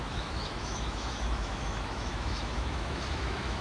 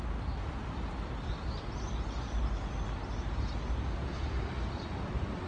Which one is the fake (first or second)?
first